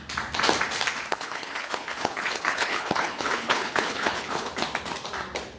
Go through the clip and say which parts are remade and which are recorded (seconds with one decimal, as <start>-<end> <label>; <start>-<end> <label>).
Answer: 0.0-1.1 recorded; 1.1-4.5 remade; 4.5-5.6 recorded